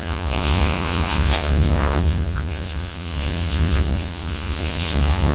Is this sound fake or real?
fake